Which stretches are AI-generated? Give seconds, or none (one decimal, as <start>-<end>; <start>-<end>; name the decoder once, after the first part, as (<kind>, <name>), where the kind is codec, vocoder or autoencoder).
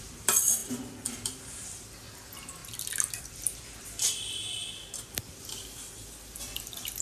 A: 0.0-2.6 (vocoder, BigVGAN v2); 3.2-4.4; 5.2-7.0